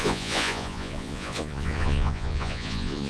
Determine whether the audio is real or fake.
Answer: fake